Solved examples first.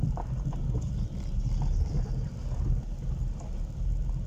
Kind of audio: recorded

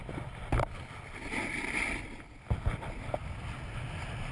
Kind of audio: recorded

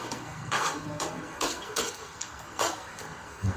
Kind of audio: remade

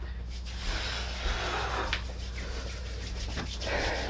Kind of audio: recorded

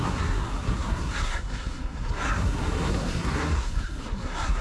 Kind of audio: remade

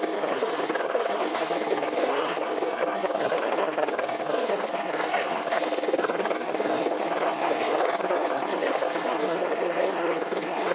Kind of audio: remade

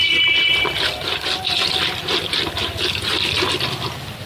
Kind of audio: recorded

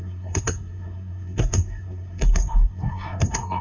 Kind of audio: remade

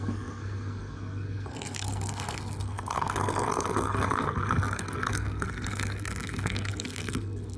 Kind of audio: remade